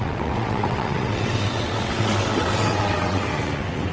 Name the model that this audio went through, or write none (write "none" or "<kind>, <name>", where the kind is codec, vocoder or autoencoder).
vocoder, WaveNeXt